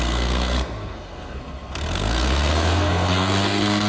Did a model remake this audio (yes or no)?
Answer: yes